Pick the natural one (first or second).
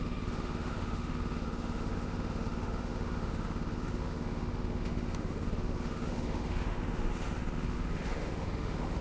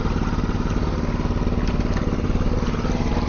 second